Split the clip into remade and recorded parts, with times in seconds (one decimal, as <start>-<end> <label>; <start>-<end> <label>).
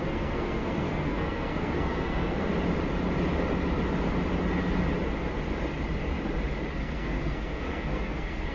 0.0-2.5 remade; 2.5-6.7 recorded; 6.7-8.5 remade